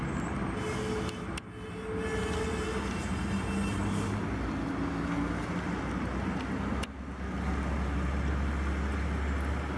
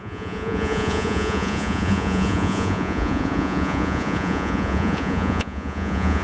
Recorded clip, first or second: first